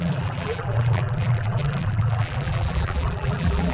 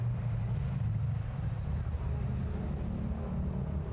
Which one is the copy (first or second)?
first